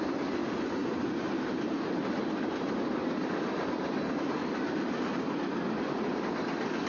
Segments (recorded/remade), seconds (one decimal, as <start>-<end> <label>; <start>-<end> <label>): 0.0-0.4 recorded; 0.4-1.8 remade; 1.8-6.9 recorded